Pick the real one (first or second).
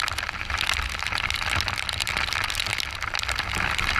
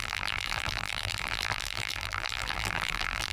first